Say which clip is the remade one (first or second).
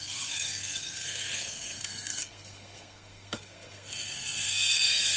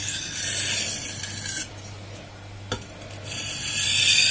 first